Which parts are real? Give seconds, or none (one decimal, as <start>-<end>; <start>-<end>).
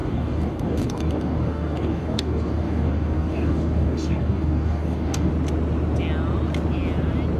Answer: 5.3-7.4